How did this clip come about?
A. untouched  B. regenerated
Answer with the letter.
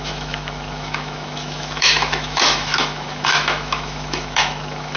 B